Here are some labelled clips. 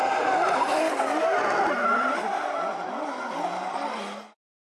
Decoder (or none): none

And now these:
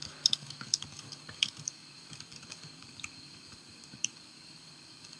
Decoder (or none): codec, DAC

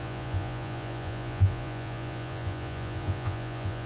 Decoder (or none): vocoder, Vocos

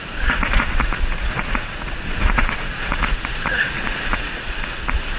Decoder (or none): vocoder, Vocos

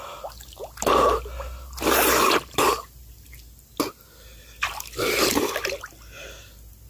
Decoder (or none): none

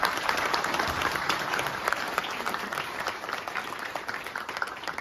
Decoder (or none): vocoder, BigVGAN v2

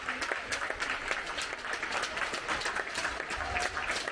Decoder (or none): none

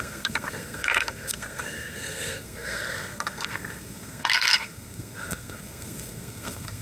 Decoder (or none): codec, SNAC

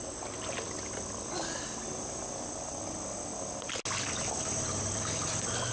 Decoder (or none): none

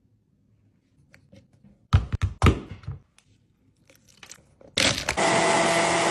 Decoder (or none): none